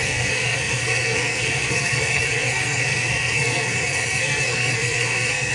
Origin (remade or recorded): remade